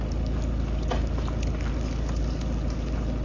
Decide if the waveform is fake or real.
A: real